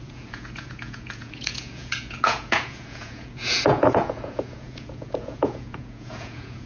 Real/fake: fake